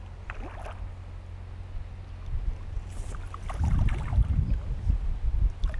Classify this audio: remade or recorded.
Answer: recorded